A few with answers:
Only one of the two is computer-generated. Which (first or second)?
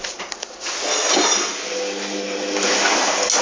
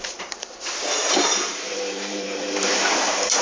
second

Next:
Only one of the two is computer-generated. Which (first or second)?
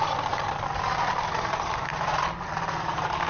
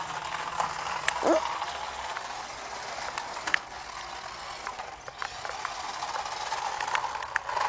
first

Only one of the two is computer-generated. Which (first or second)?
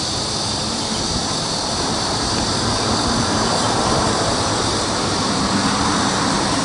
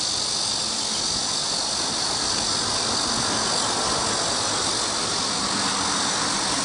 first